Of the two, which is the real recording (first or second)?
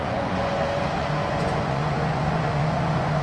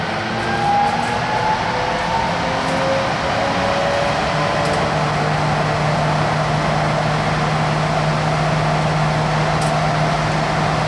second